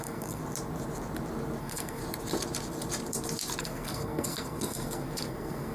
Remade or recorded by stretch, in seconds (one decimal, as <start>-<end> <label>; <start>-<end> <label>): 0.0-0.4 remade; 0.4-1.6 recorded; 1.6-2.0 remade; 2.0-3.6 recorded; 3.6-5.7 remade